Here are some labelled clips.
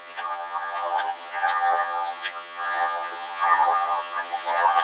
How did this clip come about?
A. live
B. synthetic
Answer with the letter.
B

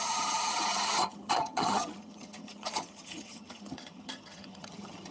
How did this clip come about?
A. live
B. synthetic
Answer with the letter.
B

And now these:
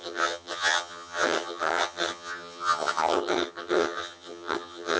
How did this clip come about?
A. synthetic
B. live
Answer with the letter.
A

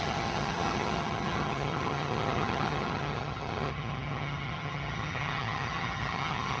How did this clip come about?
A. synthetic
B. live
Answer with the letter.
A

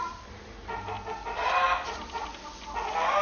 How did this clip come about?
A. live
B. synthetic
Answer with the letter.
A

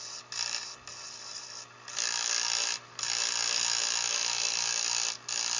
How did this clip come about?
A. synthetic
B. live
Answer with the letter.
B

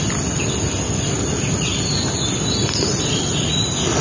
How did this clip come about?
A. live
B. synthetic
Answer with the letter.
A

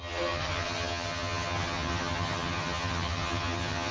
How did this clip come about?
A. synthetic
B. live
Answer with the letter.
A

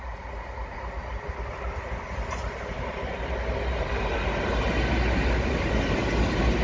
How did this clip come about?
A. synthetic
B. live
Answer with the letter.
B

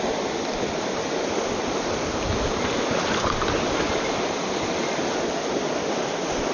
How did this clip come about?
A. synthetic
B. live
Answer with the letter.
B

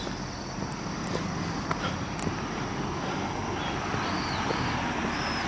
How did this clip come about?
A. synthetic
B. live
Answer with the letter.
B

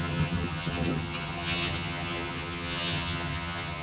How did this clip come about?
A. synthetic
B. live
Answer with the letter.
A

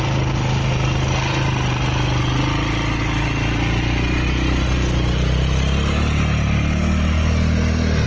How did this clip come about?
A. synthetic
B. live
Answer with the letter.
B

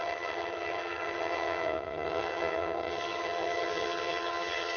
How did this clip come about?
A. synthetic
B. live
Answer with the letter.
A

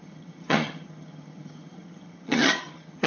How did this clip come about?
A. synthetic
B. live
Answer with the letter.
A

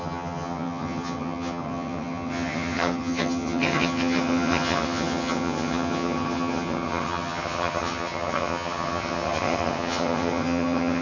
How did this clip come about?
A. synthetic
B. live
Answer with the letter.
A